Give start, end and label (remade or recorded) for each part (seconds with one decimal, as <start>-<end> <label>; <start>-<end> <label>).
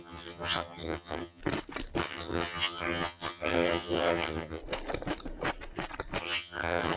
0.0-1.4 remade; 1.4-2.0 recorded; 2.0-4.6 remade; 4.6-6.2 recorded; 6.2-7.0 remade